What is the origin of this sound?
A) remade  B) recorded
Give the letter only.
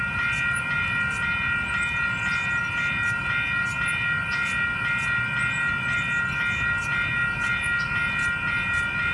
B